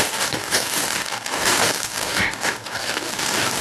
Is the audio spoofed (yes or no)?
yes